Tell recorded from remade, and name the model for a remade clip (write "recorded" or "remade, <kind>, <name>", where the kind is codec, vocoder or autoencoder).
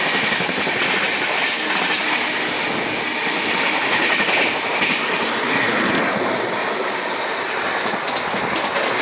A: recorded